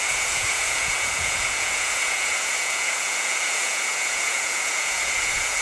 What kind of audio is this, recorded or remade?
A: remade